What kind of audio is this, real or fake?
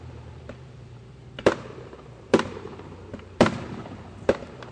fake